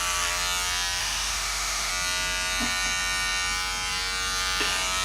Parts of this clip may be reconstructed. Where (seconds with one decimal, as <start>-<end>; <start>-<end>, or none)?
1.0-1.9